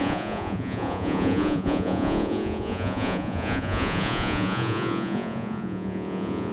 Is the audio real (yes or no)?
no